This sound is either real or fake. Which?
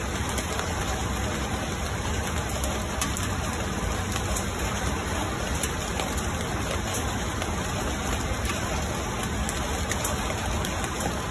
real